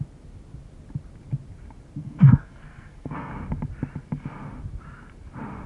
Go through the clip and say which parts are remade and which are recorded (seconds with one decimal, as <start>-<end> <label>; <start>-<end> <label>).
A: 0.0-2.0 recorded; 2.0-3.3 remade; 3.3-5.7 recorded